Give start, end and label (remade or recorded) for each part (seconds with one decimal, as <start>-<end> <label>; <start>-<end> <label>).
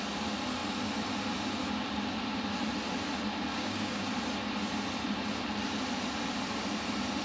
0.0-3.5 recorded; 3.5-4.1 remade; 4.1-7.2 recorded